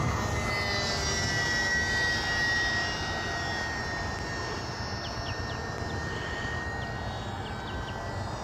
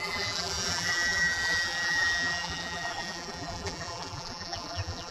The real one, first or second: first